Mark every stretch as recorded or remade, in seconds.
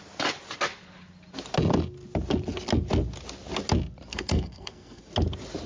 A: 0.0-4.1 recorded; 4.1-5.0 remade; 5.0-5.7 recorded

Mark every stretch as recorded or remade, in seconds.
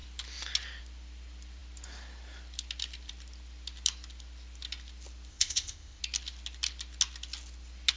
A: 0.0-5.3 recorded; 5.3-6.0 remade; 6.0-8.0 recorded